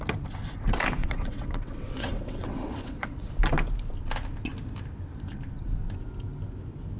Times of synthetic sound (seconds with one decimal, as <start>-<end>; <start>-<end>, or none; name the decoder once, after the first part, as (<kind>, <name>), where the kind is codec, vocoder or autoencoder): 1.0-3.3 (vocoder, WaveNeXt)

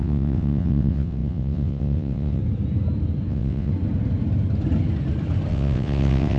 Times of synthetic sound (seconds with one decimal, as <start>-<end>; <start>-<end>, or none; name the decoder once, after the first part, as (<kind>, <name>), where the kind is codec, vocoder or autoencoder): 0.0-2.4 (vocoder, WaveNeXt); 3.3-3.7; 5.5-6.4

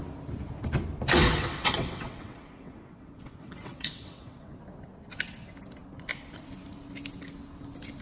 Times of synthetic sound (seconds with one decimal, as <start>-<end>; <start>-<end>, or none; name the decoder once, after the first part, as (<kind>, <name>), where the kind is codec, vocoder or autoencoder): 1.2-4.6 (vocoder, WaveNeXt)

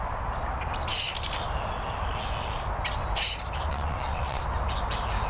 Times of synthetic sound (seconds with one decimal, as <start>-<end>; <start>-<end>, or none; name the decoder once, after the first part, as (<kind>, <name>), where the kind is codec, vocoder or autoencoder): 3.7-4.4 (vocoder, WaveNeXt)